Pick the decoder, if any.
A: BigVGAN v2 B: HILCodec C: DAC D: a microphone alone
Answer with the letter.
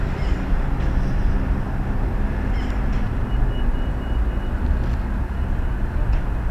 D